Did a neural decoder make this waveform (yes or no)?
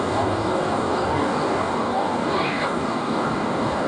yes